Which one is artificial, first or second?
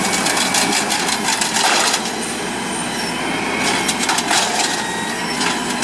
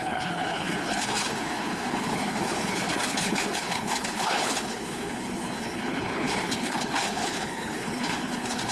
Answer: second